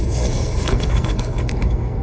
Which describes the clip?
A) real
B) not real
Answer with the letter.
B